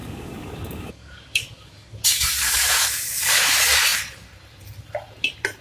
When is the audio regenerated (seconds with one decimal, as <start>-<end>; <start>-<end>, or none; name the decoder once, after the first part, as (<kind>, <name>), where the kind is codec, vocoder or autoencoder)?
0.0-3.4 (codec, DAC)